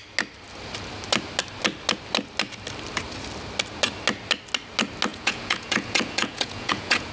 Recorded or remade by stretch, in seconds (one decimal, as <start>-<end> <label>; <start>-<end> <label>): 0.0-5.1 recorded; 5.1-7.1 remade